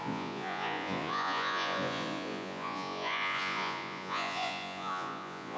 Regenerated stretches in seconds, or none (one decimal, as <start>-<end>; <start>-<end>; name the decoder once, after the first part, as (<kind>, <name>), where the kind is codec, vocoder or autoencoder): 0.0-5.6 (vocoder, Vocos)